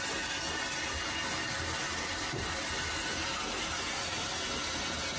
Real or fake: real